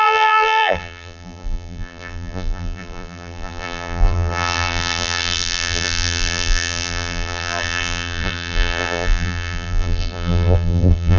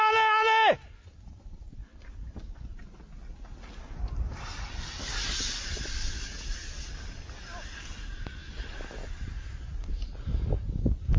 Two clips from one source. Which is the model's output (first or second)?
first